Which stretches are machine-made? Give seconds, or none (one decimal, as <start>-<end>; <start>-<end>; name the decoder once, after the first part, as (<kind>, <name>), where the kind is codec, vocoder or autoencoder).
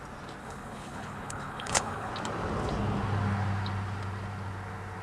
0.4-2.1 (codec, HILCodec)